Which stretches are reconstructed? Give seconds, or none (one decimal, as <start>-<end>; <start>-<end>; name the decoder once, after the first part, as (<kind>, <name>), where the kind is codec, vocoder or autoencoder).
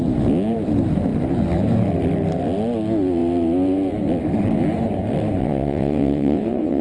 5.4-6.8 (vocoder, WaveNeXt)